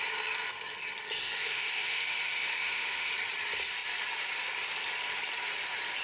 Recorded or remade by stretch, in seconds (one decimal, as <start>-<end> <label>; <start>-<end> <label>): 0.0-1.2 recorded; 1.2-3.1 remade; 3.1-6.0 recorded